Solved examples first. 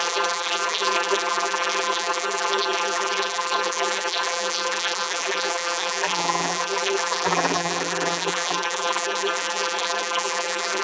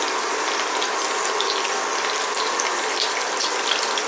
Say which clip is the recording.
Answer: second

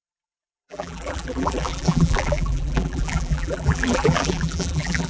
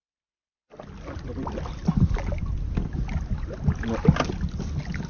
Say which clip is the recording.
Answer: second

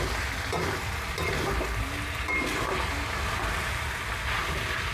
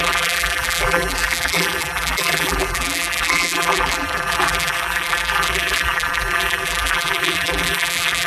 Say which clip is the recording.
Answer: first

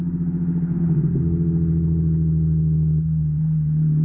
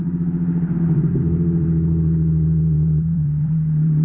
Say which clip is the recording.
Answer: first